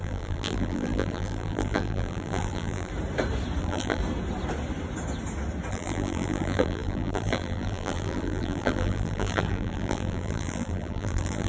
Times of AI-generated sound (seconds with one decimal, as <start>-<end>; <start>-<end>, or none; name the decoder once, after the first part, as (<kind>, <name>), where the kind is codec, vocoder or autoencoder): 0.0-2.9 (vocoder, BigVGAN v2); 3.6-4.0; 5.7-11.5